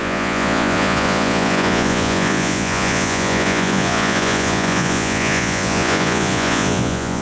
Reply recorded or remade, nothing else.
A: remade